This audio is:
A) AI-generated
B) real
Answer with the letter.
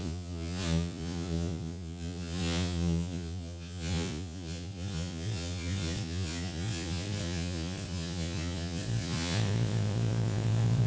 A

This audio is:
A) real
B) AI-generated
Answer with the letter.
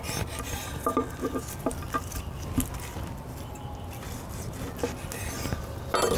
A